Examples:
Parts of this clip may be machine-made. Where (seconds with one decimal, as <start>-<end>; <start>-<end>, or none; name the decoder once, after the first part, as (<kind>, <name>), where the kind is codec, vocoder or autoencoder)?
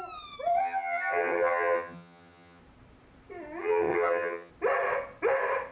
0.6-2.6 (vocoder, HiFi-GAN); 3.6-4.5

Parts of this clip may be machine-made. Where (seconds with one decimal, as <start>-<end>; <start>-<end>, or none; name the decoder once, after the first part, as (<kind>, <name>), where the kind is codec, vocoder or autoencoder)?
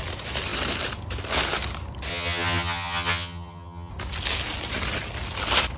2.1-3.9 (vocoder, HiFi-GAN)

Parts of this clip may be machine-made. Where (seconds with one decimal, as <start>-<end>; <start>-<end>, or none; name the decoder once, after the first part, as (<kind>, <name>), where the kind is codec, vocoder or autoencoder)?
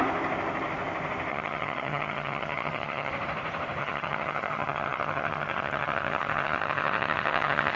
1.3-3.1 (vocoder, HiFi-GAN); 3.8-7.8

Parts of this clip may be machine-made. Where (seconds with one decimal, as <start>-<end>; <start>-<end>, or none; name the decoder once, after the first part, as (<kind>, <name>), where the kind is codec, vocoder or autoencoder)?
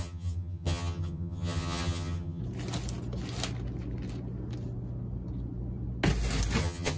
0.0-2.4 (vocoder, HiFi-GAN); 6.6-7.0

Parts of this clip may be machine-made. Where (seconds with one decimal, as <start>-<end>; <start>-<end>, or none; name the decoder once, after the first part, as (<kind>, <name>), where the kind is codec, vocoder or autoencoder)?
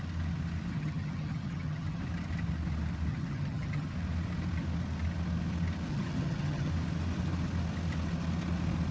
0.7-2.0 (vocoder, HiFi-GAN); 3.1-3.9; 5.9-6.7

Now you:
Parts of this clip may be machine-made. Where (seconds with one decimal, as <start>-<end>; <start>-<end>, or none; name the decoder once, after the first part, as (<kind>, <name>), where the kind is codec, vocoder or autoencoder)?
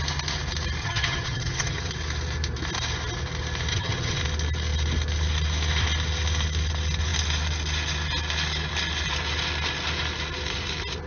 0.8-1.9 (vocoder, HiFi-GAN); 3.7-4.2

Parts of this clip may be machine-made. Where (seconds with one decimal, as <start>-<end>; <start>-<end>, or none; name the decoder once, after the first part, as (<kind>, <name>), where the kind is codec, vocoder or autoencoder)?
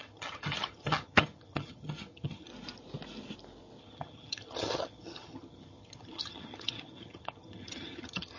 0.0-2.5 (vocoder, HiFi-GAN); 3.8-8.4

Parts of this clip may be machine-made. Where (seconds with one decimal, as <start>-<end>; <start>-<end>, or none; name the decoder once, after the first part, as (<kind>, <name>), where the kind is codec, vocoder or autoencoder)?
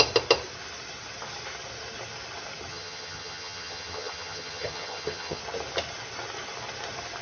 2.7-5.4 (vocoder, HiFi-GAN)